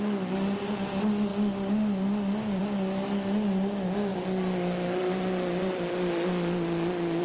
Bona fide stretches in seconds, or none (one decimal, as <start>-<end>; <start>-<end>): 0.0-4.1